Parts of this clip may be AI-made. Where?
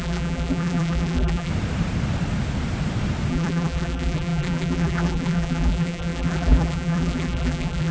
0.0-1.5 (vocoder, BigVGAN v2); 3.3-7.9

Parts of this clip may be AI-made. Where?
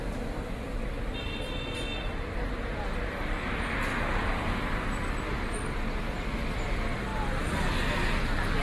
3.9-4.7 (vocoder, BigVGAN v2)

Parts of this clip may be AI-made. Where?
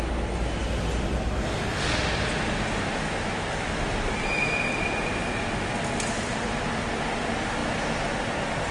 none